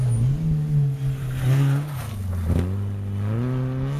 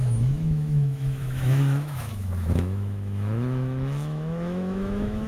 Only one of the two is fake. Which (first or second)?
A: second